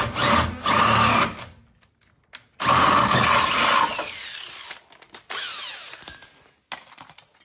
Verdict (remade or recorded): recorded